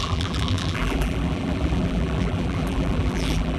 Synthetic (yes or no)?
yes